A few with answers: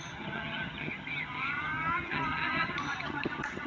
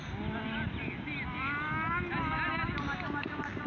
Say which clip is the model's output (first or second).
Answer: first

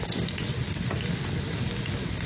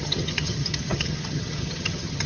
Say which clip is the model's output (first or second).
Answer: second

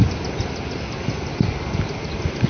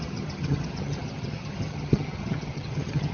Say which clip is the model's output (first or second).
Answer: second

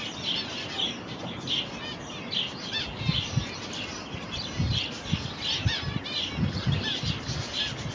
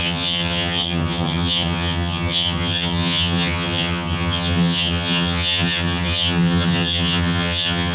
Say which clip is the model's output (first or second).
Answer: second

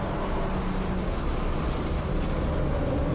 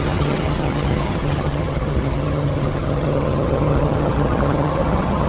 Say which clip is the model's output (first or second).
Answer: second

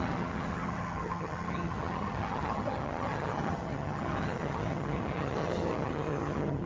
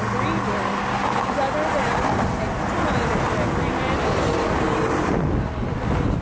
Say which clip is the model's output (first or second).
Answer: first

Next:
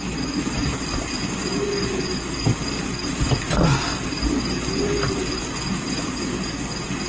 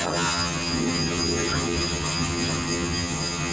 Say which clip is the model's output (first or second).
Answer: second